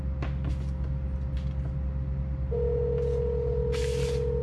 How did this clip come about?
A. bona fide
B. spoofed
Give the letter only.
A